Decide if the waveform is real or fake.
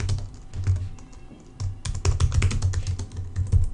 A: real